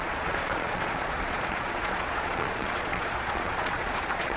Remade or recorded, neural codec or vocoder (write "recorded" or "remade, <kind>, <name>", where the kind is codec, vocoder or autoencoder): remade, vocoder, Vocos